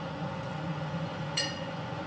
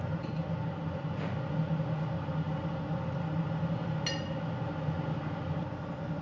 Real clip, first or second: second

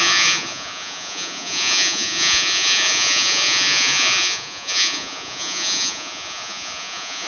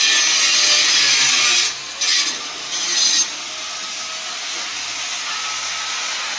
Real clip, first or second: second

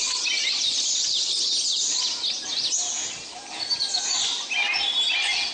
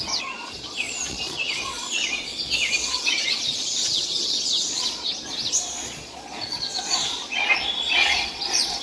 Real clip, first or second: first